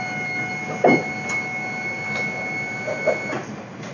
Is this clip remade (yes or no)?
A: no